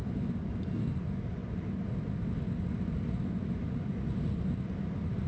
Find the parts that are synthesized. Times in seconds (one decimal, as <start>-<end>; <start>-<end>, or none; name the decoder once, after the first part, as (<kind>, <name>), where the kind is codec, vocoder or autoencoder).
none